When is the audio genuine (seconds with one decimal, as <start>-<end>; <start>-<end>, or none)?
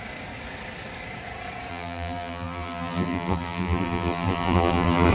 0.0-1.7